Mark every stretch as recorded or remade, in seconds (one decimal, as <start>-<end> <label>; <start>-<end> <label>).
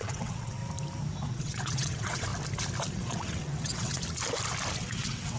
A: 0.0-0.6 remade; 0.6-1.3 recorded; 1.3-2.3 remade; 2.3-2.9 recorded; 2.9-4.0 remade; 4.0-4.8 recorded; 4.8-5.4 remade